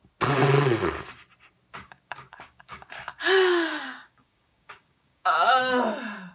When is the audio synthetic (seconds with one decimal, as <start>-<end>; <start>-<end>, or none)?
1.8-5.6